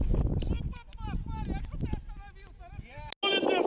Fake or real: real